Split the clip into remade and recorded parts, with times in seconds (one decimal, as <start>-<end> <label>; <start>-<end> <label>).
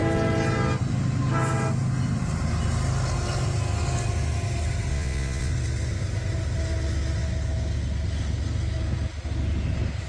0.0-4.9 recorded; 4.9-5.5 remade; 5.5-10.1 recorded